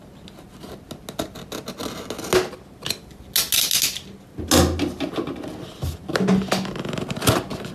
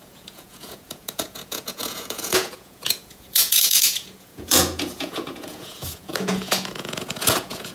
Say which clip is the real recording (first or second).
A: first